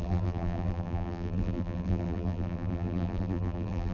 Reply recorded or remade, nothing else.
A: remade